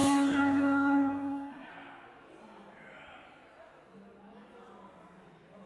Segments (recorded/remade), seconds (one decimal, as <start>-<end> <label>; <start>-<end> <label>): 0.0-1.7 remade; 1.7-5.7 recorded